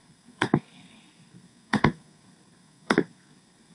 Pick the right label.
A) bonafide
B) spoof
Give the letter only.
B